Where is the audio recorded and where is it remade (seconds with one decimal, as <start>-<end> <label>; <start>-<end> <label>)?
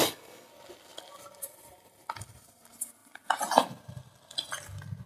0.0-0.5 remade; 0.5-5.1 recorded